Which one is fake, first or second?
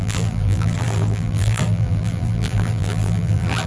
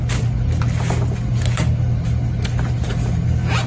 first